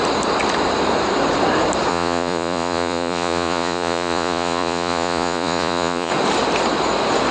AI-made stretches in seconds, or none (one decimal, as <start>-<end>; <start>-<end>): 1.9-6.1